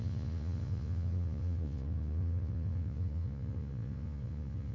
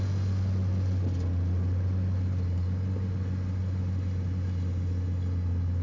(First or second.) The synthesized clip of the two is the first